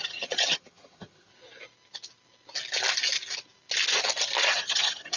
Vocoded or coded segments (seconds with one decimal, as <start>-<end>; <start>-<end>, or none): 0.0-1.3; 4.4-5.2